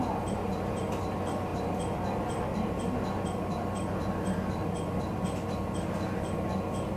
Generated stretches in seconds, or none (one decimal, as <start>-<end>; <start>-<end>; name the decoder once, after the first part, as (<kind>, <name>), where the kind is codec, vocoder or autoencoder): none